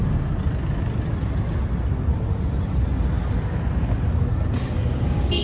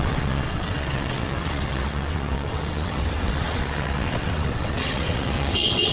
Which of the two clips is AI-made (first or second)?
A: second